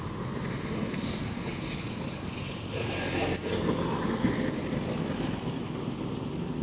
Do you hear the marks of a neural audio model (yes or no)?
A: no